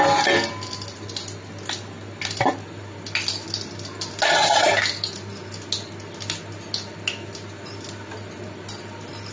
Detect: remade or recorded recorded